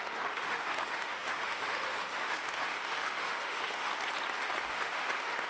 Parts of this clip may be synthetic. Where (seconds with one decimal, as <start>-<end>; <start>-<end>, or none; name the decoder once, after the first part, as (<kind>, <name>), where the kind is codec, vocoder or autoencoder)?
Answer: 0.0-3.9 (autoencoder, DAC-VAE); 4.7-5.5